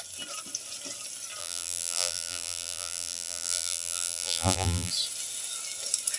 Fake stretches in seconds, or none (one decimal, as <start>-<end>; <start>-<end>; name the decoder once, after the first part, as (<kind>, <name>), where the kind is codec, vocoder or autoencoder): 1.4-4.9 (vocoder, BigVGAN v2)